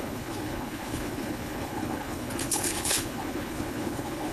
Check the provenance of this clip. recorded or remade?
remade